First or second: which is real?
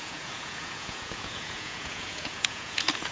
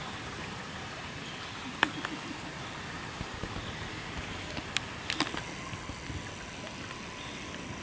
second